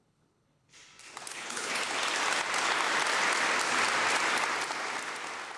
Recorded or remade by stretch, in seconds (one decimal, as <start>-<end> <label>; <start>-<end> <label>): 0.0-0.7 remade; 0.7-1.3 recorded; 1.3-1.8 remade; 1.8-5.6 recorded